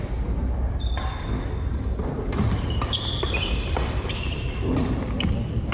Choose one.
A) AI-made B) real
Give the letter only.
A